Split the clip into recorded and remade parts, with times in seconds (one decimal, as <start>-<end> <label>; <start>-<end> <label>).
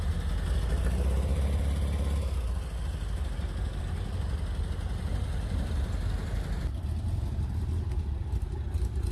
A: 0.0-9.1 recorded